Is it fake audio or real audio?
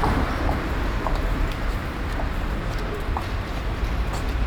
fake